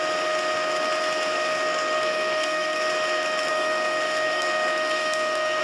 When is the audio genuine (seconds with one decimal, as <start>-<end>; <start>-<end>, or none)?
0.0-1.3; 2.9-3.5